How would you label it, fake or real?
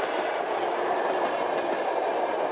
real